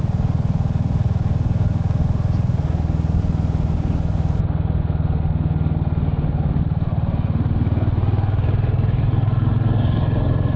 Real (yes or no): yes